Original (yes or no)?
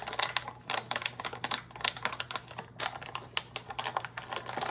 yes